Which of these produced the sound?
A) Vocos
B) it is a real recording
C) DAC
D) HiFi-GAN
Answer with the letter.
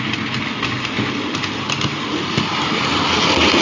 B